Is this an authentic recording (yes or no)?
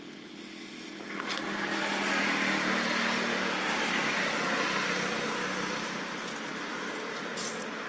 yes